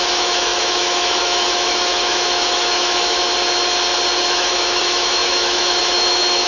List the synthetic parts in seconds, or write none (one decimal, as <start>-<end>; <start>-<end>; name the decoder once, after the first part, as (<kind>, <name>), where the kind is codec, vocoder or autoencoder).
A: 0.0-3.3 (autoencoder, DAC-VAE); 4.3-6.5